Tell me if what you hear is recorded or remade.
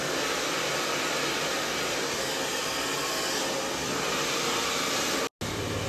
recorded